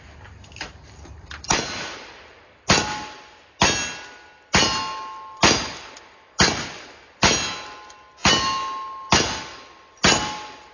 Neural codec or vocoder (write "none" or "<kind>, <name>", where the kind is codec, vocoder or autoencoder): none